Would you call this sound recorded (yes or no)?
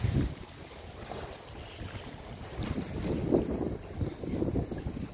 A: yes